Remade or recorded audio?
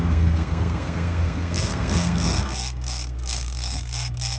remade